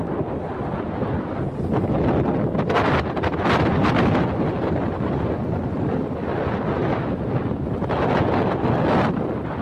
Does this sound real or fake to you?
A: real